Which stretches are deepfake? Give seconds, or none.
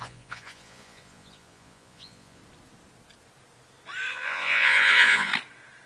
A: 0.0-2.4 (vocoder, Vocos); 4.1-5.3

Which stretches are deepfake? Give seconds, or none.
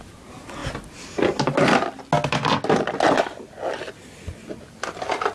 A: none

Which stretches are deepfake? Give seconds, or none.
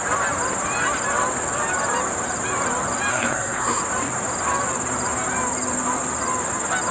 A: 3.1-3.8 (codec, SNAC)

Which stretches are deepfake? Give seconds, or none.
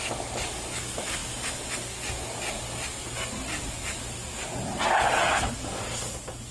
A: none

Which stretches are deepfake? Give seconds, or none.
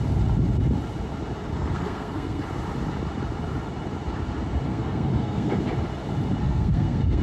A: 1.5-2.4 (codec, SNAC); 4.7-5.6; 6.4-7.2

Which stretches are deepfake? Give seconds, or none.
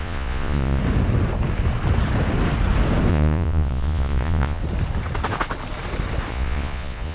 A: 0.0-0.8 (vocoder, Vocos); 3.1-4.6; 6.3-7.1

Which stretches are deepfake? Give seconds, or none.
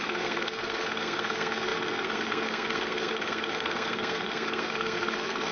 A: 0.0-5.5 (codec, SNAC)